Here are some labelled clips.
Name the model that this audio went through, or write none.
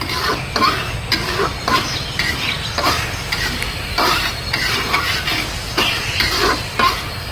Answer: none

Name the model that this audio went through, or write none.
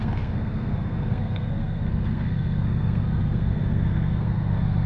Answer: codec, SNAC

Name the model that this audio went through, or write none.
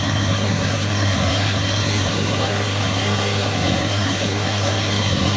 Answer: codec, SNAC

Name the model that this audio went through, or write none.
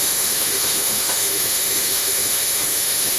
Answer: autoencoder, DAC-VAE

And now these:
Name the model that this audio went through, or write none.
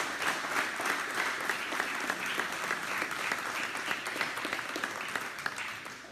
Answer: none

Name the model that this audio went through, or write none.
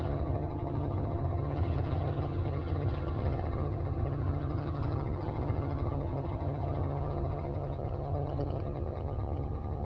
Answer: vocoder, HiFi-GAN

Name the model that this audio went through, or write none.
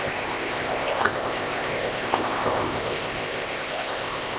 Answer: codec, ZipCodec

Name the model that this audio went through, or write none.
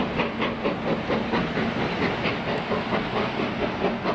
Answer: none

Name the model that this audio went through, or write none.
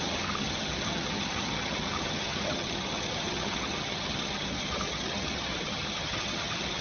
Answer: vocoder, HiFi-GAN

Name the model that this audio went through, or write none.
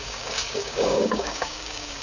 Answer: codec, DAC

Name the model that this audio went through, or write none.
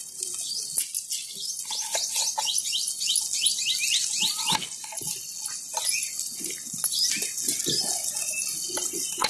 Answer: none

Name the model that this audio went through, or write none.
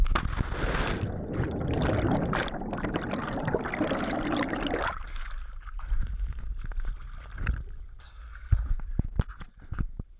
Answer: none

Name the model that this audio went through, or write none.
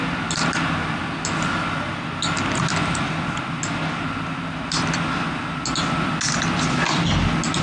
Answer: none